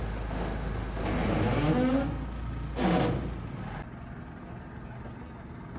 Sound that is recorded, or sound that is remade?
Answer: recorded